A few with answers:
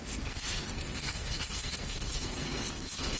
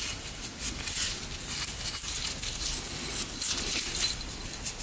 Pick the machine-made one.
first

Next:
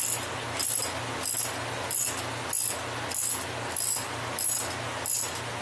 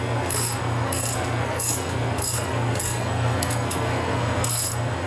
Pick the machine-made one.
second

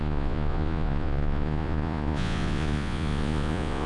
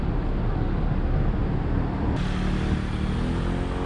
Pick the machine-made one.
first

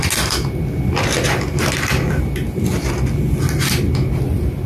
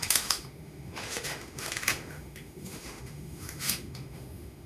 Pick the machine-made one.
second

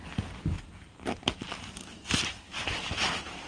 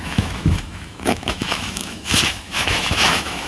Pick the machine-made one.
second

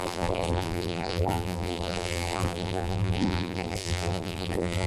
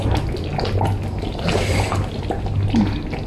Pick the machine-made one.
first